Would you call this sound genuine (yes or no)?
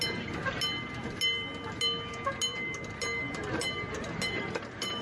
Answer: yes